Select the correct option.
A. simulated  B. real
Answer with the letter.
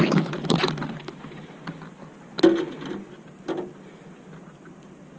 B